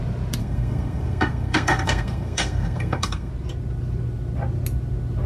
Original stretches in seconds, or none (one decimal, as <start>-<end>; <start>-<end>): 0.0-0.4; 3.3-5.3